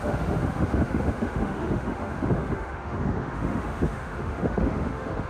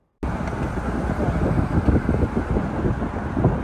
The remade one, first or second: first